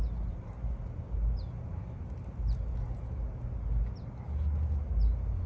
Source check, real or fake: real